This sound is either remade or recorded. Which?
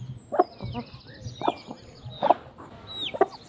recorded